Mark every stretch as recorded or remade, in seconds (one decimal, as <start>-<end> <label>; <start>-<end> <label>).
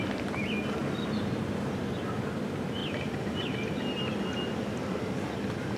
0.0-0.8 recorded; 0.8-1.9 remade; 1.9-5.8 recorded